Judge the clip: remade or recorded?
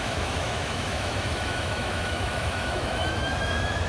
remade